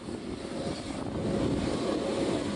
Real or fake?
real